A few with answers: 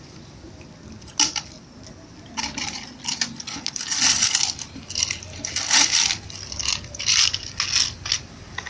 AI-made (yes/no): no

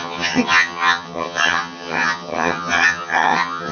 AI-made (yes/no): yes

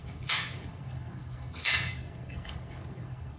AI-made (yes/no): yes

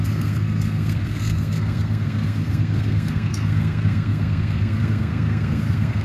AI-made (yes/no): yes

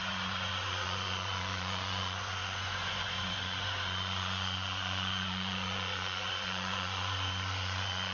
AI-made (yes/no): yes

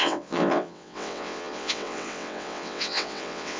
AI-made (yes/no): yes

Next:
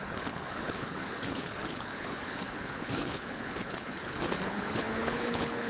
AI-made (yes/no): yes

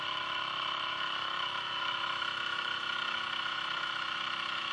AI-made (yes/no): yes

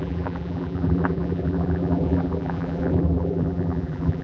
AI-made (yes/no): yes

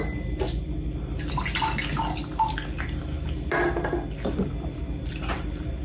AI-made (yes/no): no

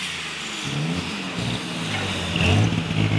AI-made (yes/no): no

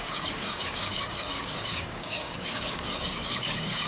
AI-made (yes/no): yes